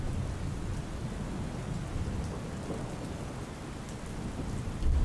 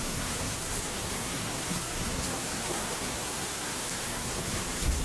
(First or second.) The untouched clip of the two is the first